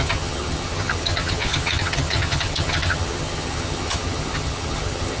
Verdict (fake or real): fake